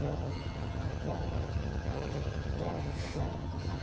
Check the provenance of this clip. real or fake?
fake